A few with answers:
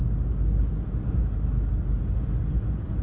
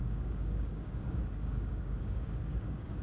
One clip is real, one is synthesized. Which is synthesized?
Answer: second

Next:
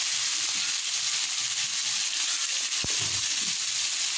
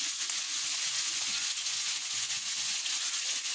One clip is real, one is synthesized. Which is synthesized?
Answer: second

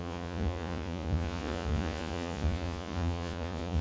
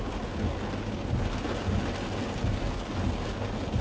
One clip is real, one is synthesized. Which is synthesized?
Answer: first